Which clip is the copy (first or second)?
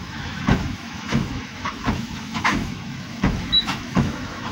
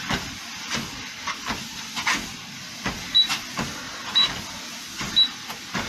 first